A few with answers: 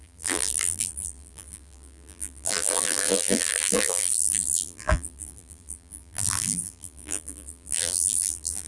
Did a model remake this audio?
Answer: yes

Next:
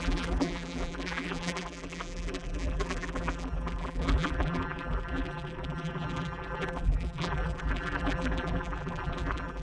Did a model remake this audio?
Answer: yes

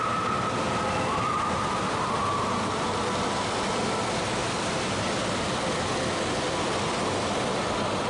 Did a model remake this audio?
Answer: no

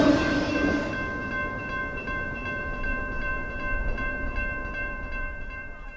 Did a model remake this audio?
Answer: yes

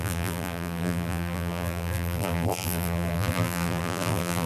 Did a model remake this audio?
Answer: yes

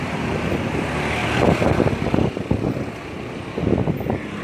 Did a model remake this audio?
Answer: yes